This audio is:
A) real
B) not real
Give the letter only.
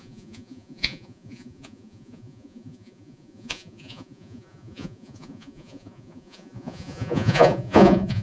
B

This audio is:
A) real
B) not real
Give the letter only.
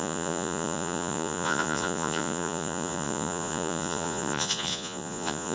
B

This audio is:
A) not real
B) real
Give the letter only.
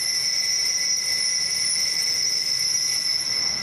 B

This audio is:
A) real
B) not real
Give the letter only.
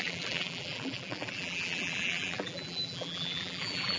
B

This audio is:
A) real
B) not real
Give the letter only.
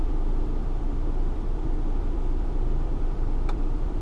B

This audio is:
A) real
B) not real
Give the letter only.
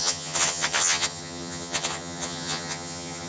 B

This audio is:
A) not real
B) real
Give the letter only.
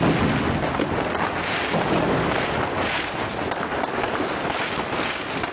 B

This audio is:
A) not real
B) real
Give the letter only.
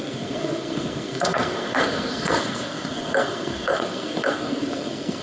A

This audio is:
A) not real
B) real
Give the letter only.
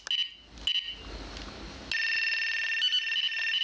B